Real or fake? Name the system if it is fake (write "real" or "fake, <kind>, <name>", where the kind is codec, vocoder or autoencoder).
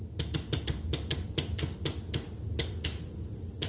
real